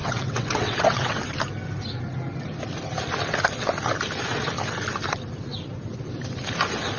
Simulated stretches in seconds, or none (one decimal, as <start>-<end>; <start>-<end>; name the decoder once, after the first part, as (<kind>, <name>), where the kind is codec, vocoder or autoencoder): 0.0-1.2 (vocoder, WaveNeXt)